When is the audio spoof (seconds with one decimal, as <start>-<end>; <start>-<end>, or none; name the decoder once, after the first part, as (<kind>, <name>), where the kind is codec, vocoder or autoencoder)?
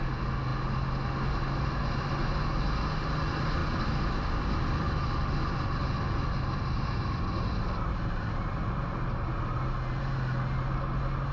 none